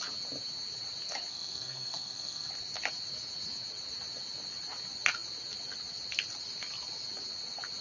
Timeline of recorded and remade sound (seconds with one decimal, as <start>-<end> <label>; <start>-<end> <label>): 0.0-1.3 recorded; 1.3-2.5 remade; 2.5-7.8 recorded